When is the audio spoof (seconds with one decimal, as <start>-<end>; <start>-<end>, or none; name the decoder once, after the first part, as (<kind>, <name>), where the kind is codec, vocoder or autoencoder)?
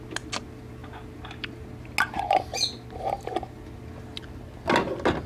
none